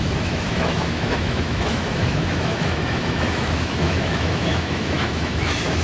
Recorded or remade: remade